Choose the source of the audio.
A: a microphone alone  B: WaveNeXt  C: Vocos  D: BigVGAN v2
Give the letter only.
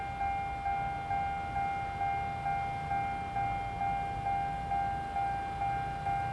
A